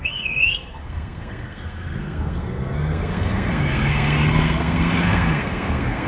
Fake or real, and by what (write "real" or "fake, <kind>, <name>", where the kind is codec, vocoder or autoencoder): fake, codec, SNAC